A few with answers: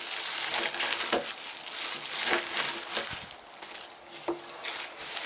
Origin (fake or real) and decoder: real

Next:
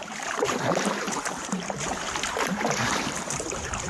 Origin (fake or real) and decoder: fake, vocoder, BigVGAN v2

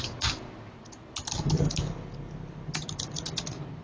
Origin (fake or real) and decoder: real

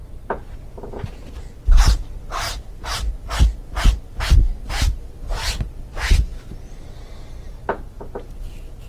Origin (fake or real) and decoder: real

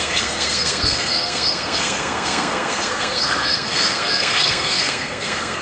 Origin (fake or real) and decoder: fake, codec, SNAC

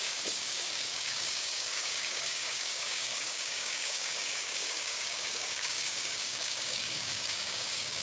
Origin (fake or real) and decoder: fake, codec, DAC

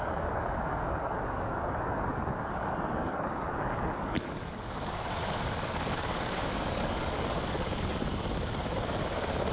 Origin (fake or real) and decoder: fake, codec, DAC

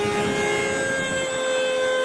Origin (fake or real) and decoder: real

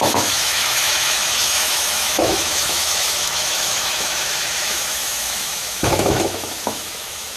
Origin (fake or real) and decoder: fake, autoencoder, DAC-VAE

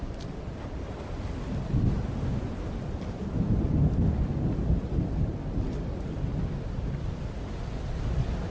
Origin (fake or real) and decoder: real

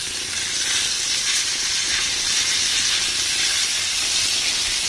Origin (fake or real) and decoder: real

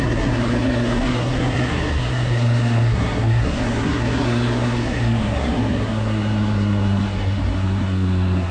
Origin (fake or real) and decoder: fake, codec, SNAC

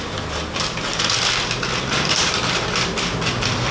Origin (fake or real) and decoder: real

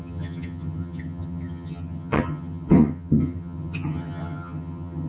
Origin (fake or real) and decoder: fake, vocoder, HiFi-GAN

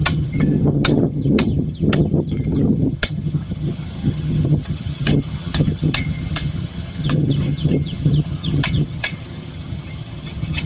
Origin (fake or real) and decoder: fake, vocoder, HiFi-GAN